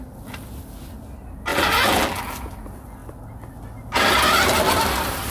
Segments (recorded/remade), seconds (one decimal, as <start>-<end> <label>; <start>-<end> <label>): 0.0-1.5 recorded; 1.5-2.2 remade; 2.2-5.3 recorded

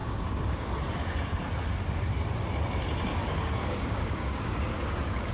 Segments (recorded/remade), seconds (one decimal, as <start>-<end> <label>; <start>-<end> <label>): 0.0-0.7 remade; 0.7-3.1 recorded; 3.1-5.3 remade